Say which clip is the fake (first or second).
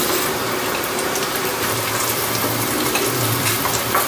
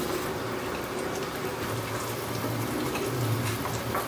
first